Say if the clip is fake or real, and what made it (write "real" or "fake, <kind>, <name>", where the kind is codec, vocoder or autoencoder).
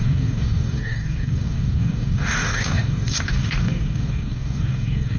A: fake, codec, DAC